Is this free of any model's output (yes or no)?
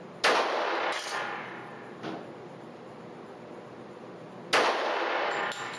yes